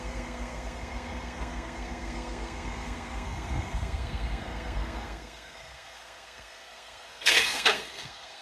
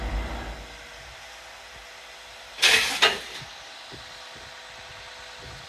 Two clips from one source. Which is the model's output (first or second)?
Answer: first